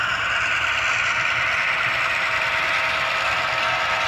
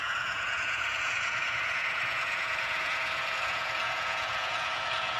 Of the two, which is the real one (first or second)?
first